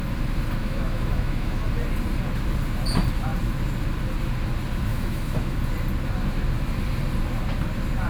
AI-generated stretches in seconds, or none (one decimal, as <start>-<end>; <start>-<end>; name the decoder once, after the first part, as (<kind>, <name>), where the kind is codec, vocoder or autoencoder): 0.6-1.6 (autoencoder, DAC-VAE); 4.9-5.6